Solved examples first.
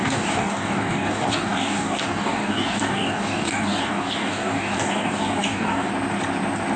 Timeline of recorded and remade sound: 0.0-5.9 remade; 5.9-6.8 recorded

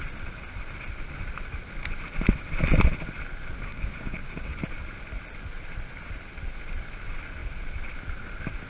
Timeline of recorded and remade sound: 0.0-3.7 recorded; 3.7-4.6 remade; 4.6-8.7 recorded

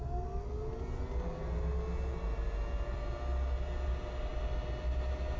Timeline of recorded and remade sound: 0.0-5.4 recorded

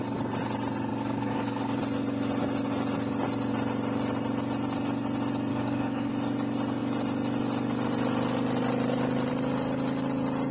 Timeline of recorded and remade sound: 0.0-0.9 recorded; 0.9-1.8 remade; 1.8-5.5 recorded; 5.5-6.1 remade; 6.1-10.5 recorded

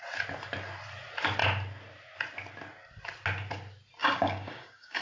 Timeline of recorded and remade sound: 0.0-4.0 recorded; 4.0-5.0 remade

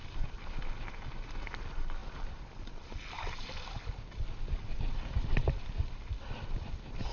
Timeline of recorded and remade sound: 0.0-7.1 recorded